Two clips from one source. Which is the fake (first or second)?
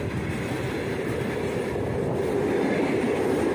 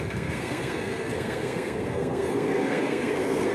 second